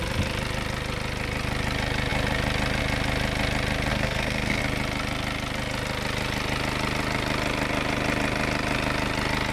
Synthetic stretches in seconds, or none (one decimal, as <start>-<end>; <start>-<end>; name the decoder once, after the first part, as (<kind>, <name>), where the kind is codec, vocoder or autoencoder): 3.9-4.6 (codec, SNAC)